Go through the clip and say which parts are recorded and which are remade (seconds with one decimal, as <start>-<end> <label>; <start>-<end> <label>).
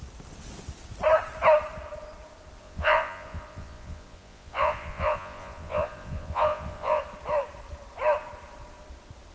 0.0-2.6 recorded; 2.6-7.0 remade; 7.0-9.3 recorded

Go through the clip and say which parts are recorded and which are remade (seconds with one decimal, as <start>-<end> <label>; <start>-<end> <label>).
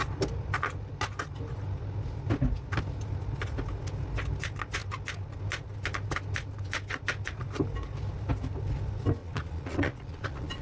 0.0-9.2 recorded; 9.2-10.6 remade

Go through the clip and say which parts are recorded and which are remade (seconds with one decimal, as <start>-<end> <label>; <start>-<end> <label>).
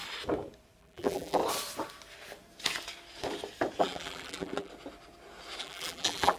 0.0-0.8 recorded; 0.8-1.4 remade; 1.4-3.8 recorded; 3.8-4.7 remade; 4.7-5.6 recorded; 5.6-6.4 remade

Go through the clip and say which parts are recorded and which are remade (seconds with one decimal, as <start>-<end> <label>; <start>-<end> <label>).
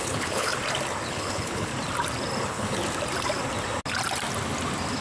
0.0-0.5 remade; 0.5-1.1 recorded; 1.1-1.7 remade; 1.7-2.4 recorded; 2.4-2.8 remade; 2.8-5.0 recorded